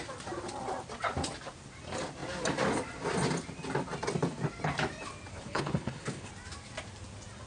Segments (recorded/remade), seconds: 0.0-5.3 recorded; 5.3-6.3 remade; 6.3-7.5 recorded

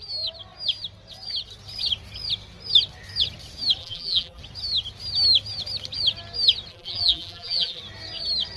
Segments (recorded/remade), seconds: 0.0-3.8 recorded; 3.8-4.4 remade; 4.4-6.7 recorded; 6.7-7.8 remade; 7.8-8.6 recorded

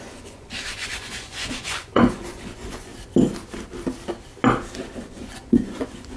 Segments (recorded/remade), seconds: 0.0-2.9 remade; 2.9-5.0 recorded; 5.0-6.2 remade

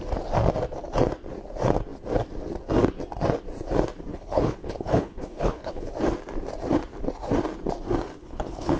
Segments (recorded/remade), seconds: 0.0-4.1 recorded; 4.1-5.9 remade; 5.9-8.2 recorded; 8.2-8.8 remade